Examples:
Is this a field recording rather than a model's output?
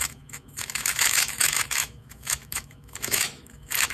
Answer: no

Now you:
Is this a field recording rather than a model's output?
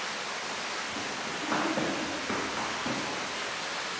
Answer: yes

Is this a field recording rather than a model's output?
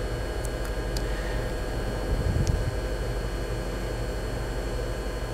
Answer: yes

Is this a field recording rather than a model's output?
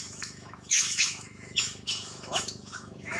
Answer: no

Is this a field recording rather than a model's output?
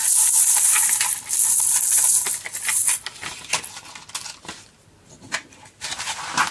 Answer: yes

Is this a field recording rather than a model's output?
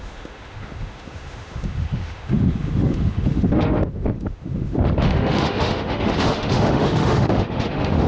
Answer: no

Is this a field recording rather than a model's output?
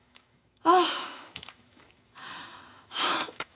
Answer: no